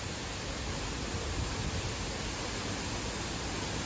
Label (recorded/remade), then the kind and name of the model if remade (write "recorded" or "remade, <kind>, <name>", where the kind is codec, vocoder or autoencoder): recorded